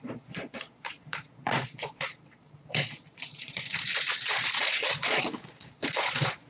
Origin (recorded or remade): remade